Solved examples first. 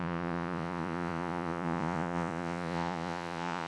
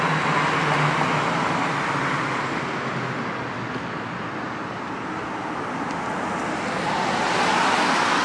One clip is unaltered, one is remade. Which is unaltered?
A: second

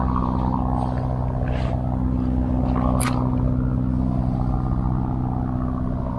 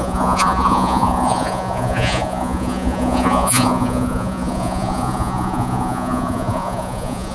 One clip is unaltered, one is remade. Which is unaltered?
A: first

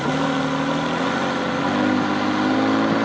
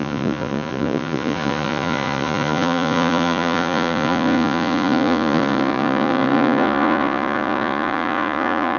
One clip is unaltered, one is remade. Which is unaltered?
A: first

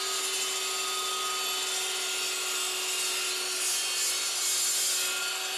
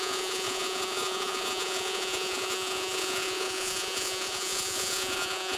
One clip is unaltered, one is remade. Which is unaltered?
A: first